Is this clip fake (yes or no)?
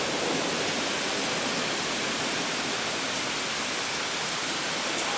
yes